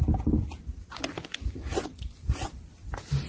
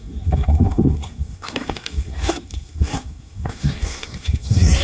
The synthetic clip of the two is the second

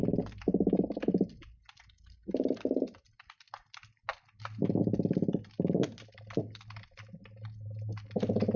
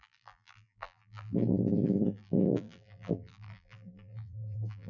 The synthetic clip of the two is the second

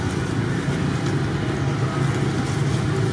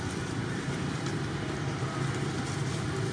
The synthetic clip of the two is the second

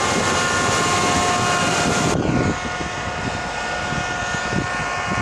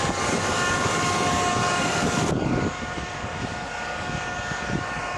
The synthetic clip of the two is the second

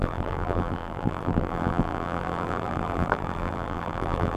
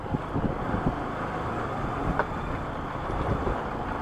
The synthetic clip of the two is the first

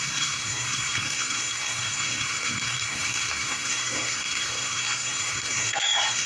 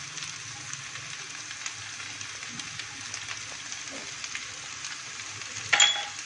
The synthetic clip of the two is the first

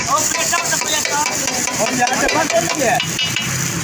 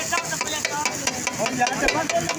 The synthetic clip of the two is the first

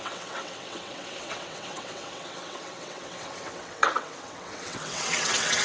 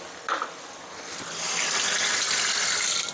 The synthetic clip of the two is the first